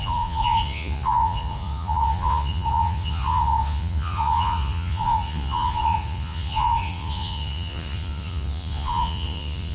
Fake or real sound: fake